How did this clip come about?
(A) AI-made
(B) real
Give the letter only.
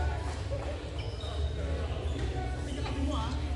B